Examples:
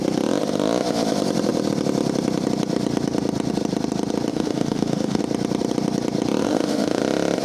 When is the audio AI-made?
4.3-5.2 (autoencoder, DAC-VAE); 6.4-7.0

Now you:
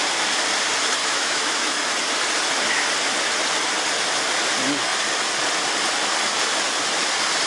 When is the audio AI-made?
1.0-1.9 (autoencoder, DAC-VAE)

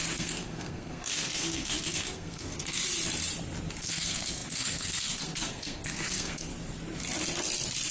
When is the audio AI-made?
0.0-2.8 (codec, SNAC); 3.8-6.5

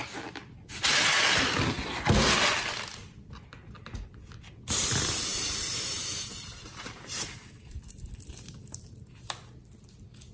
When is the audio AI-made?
5.3-8.1 (vocoder, BigVGAN v2)

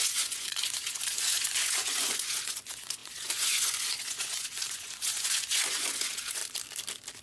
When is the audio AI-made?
0.0-6.4 (vocoder, Vocos)

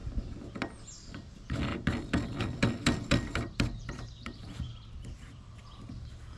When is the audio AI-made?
0.8-1.7 (vocoder, BigVGAN v2); 2.4-6.4

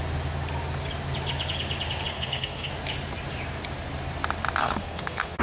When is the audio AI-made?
2.1-2.7 (codec, SNAC); 4.6-5.4